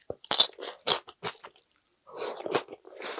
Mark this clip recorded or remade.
recorded